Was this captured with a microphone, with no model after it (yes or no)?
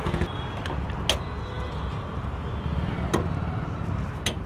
yes